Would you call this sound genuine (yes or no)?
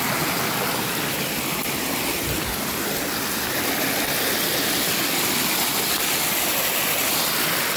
yes